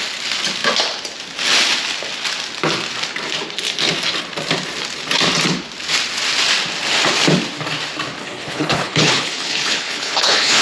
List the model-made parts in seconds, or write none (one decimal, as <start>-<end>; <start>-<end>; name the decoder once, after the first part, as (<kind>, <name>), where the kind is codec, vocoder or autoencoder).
8.2-10.6 (codec, HILCodec)